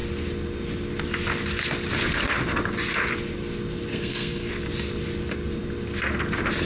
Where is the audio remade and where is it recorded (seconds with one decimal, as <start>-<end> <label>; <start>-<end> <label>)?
0.0-3.9 recorded; 3.9-4.5 remade; 4.5-6.7 recorded